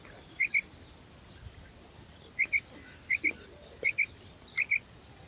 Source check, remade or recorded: recorded